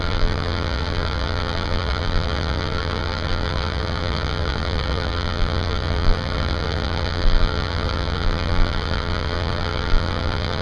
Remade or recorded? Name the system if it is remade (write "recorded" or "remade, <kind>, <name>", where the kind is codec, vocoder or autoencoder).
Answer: remade, vocoder, BigVGAN v2